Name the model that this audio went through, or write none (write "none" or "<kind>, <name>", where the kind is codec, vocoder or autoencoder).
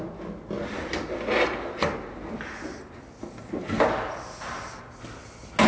none